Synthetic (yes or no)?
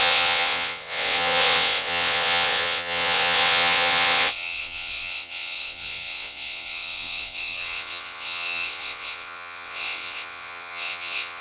yes